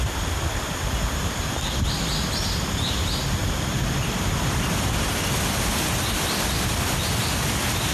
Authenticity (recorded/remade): recorded